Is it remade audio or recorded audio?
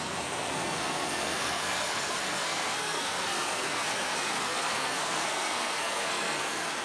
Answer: remade